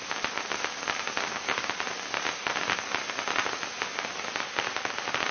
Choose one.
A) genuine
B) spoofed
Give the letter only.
A